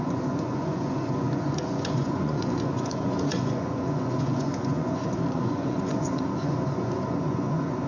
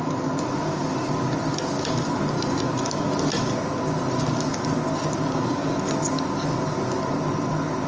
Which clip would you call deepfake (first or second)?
first